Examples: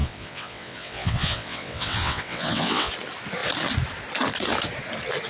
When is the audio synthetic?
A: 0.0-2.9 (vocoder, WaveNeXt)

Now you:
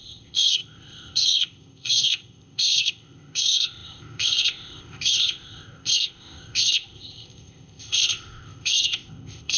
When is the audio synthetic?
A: 0.0-9.6 (codec, ZipCodec)

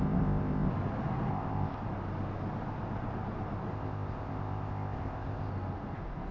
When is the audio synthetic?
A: 0.0-0.7 (codec, ZipCodec); 1.3-1.8; 3.7-5.5

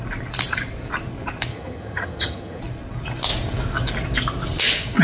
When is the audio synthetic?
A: 1.5-2.6 (vocoder, HiFi-GAN)

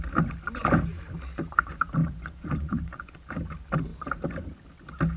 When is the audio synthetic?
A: 2.0-3.3 (vocoder, Vocos)

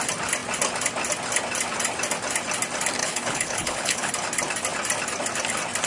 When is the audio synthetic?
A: 3.0-4.1 (codec, HILCodec)

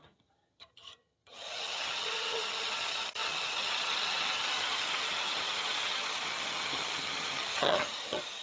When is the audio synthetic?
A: 0.0-8.4 (vocoder, HiFi-GAN)